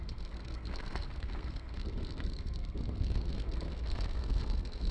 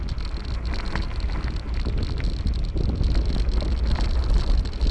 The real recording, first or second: second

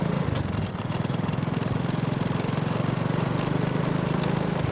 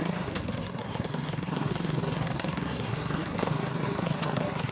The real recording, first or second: first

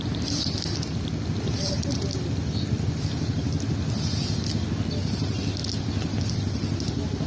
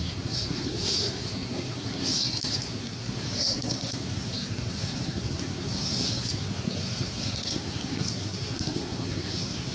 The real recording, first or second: first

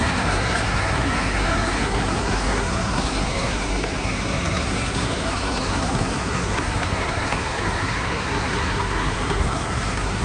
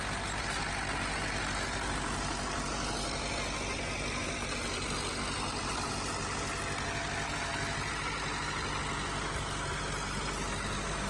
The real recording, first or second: second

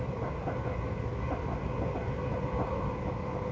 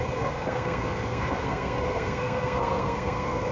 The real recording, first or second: first